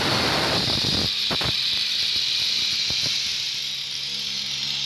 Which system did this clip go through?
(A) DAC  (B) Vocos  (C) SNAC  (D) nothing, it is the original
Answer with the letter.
D